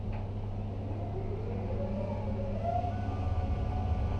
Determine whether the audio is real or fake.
real